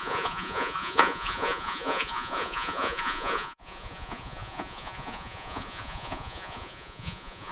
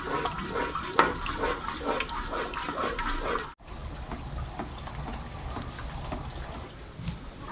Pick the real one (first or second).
second